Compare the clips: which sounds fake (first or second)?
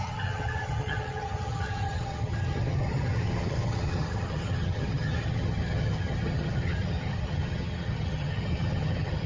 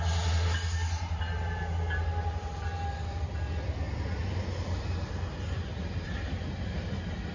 first